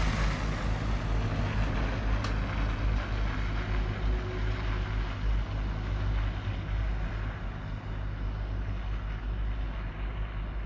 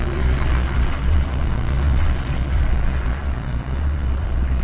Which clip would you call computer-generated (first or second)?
second